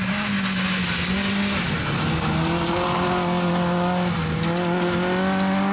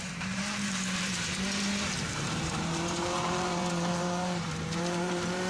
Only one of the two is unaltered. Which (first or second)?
first